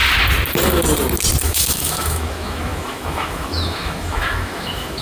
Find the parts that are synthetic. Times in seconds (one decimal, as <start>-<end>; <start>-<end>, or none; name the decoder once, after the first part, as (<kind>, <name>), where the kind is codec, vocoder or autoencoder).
1.4-5.0 (autoencoder, DAC-VAE)